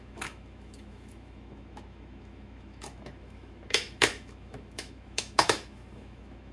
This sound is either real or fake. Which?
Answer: fake